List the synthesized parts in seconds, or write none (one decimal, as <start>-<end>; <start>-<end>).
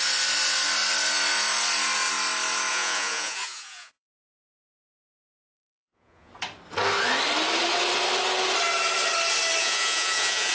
2.7-6.3; 9.6-10.5